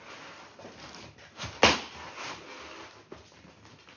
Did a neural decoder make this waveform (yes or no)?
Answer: no